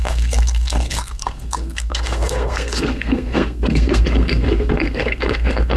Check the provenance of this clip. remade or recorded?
remade